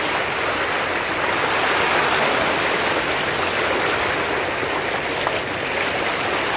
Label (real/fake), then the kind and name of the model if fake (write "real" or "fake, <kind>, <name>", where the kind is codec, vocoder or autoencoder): real